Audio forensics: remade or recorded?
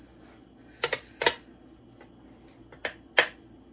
recorded